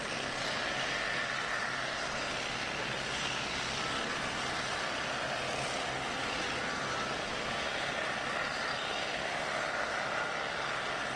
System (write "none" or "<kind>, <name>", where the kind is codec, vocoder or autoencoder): none